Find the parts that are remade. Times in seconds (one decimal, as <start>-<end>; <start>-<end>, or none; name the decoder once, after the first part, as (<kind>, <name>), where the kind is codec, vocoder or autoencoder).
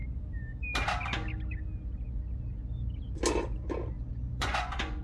4.1-5.0 (vocoder, Vocos)